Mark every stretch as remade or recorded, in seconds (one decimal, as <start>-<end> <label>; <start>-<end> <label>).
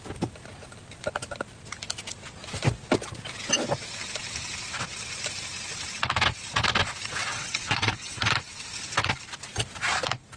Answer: 0.0-7.3 recorded; 7.3-8.3 remade; 8.3-10.4 recorded